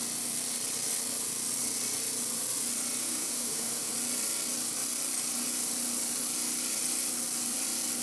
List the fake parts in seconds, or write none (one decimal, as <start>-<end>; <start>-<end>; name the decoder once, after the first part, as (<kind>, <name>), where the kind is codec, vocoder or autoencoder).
3.0-3.9 (autoencoder, DAC-VAE)